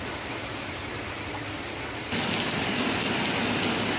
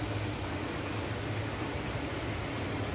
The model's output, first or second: first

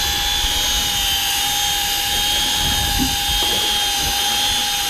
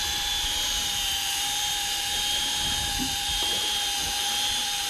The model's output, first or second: second